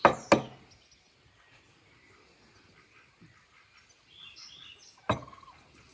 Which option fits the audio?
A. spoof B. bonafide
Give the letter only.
B